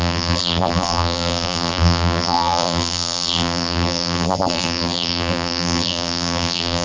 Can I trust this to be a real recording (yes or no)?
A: no